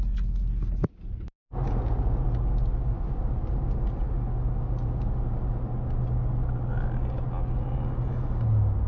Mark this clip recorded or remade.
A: recorded